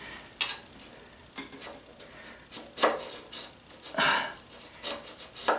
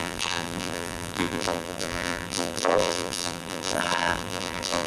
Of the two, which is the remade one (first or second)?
second